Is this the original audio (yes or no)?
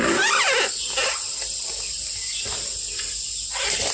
yes